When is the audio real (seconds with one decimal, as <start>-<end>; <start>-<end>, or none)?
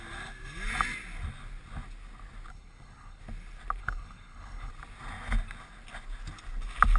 0.0-2.5; 3.2-3.8; 4.7-7.0